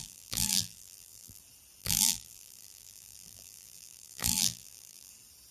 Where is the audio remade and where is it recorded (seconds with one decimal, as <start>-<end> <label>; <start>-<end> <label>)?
0.0-1.4 remade; 1.4-1.8 recorded; 1.8-5.1 remade; 5.1-5.5 recorded